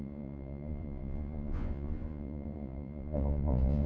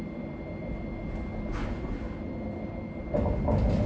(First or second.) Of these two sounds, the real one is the second